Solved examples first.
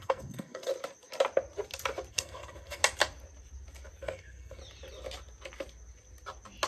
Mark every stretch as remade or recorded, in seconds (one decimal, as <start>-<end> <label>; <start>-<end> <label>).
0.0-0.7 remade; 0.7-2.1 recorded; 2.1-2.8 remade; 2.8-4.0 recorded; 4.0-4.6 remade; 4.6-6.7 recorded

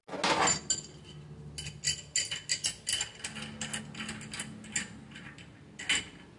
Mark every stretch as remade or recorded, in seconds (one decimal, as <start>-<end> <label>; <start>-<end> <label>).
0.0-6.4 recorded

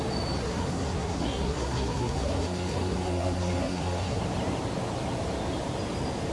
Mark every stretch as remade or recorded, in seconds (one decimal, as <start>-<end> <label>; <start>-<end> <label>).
0.0-0.4 recorded; 0.4-4.2 remade; 4.2-6.3 recorded